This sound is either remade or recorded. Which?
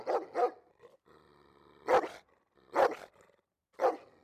recorded